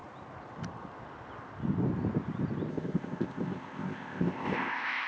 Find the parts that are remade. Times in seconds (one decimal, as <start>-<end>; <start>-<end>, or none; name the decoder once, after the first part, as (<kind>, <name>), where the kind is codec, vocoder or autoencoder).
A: 2.7-5.1 (codec, ZipCodec)